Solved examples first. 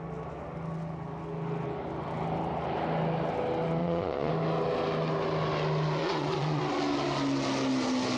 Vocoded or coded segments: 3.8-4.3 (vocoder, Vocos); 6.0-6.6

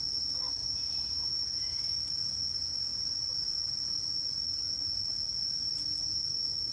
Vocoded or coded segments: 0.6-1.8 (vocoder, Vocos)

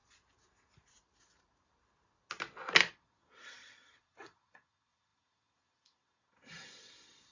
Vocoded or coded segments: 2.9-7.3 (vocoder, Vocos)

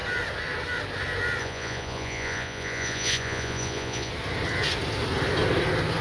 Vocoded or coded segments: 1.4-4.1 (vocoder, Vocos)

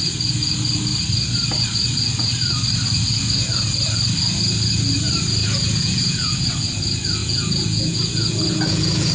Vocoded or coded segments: 5.4-6.5 (vocoder, Vocos); 7.2-9.1